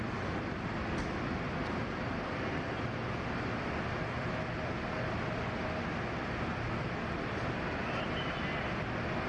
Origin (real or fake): real